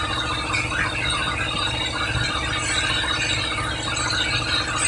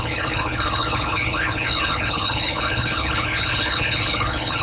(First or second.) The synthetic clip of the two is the second